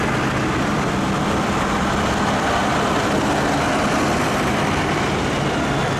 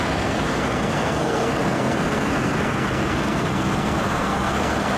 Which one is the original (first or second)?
first